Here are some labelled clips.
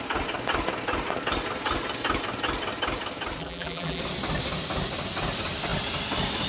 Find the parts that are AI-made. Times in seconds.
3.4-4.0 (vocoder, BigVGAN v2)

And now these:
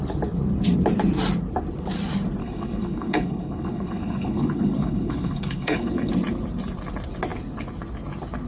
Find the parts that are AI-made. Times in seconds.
2.4-6.1 (codec, HILCodec)

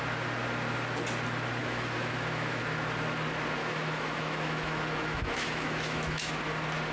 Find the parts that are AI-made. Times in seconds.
1.6-2.6 (autoencoder, DAC-VAE); 3.6-6.3

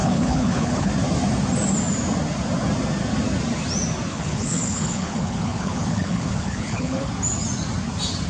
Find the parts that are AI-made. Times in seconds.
0.0-0.9 (codec, HILCodec); 4.1-7.1

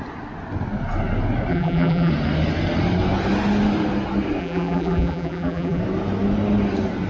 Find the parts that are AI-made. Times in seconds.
1.5-2.1 (vocoder, BigVGAN v2); 4.4-5.8